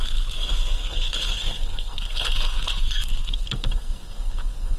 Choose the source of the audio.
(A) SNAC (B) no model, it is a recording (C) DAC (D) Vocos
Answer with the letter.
A